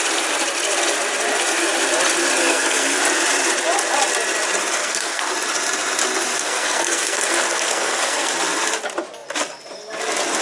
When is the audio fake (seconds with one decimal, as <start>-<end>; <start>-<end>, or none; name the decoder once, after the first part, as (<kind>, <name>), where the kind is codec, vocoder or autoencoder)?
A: 2.4-3.0 (codec, SNAC); 4.8-5.3; 6.3-8.3

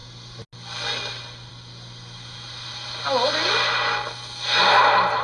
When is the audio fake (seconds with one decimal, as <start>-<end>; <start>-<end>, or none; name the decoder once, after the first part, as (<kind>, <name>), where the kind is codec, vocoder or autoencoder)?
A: none

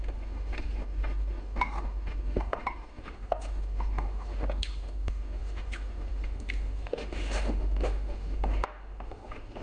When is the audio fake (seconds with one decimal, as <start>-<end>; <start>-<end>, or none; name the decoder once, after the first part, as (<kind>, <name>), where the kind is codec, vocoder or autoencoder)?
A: 0.0-9.6 (autoencoder, DAC-VAE)